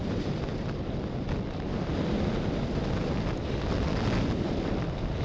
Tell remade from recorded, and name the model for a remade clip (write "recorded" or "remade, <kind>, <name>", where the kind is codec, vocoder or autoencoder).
recorded